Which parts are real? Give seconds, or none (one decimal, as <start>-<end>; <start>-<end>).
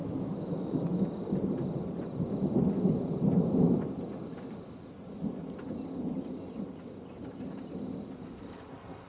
1.1-9.1